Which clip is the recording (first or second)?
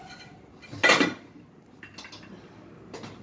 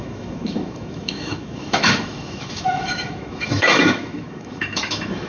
first